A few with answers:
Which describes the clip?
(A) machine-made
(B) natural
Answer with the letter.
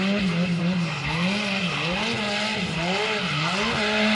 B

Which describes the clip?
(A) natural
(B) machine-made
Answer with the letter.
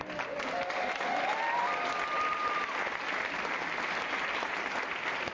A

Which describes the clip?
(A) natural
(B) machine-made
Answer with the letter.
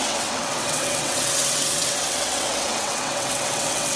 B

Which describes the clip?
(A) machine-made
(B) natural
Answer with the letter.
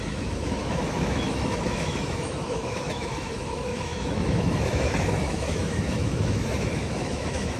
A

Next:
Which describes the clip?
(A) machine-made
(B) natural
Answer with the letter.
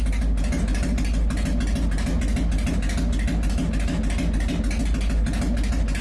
B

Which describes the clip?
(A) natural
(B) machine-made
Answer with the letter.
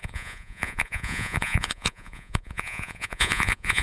B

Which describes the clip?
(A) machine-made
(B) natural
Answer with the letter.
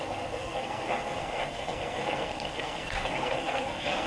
A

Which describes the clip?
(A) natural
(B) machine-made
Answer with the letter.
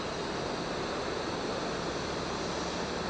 A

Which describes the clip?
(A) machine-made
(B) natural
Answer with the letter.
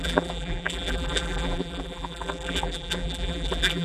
A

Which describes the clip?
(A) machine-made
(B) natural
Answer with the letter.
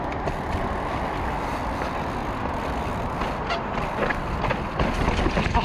B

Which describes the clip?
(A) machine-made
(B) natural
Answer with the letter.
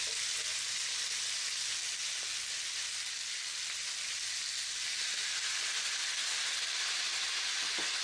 B